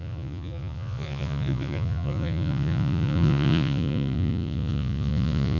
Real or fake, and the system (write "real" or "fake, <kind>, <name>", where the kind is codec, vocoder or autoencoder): fake, vocoder, Vocos